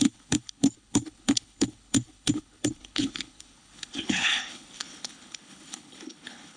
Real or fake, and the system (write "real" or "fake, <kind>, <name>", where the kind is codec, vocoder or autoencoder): fake, codec, HILCodec